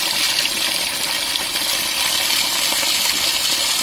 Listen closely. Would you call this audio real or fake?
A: real